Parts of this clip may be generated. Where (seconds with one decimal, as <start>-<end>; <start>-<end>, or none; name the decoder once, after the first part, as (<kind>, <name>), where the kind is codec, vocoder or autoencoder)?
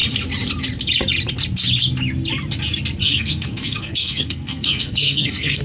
3.0-5.6 (codec, SNAC)